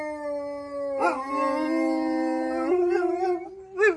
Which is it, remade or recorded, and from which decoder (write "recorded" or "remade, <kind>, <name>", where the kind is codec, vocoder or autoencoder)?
recorded